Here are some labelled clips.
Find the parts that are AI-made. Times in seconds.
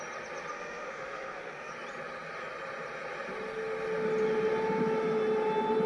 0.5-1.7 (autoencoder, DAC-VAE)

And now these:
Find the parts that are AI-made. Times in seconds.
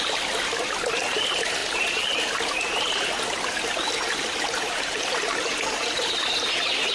none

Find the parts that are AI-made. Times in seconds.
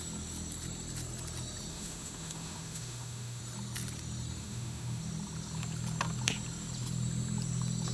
1.7-3.4 (autoencoder, DAC-VAE); 4.4-5.0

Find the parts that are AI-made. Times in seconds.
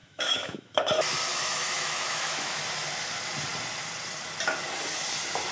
0.0-0.9 (autoencoder, DAC-VAE); 1.3-2.6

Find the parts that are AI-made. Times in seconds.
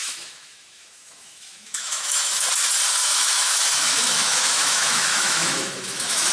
0.0-2.5 (autoencoder, DAC-VAE); 3.0-6.3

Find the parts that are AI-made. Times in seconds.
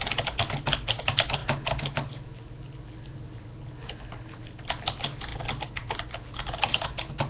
none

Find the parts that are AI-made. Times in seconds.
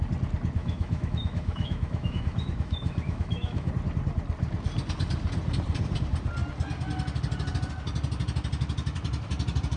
0.6-3.7 (autoencoder, DAC-VAE)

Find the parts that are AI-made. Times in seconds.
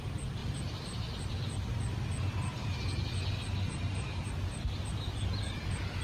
none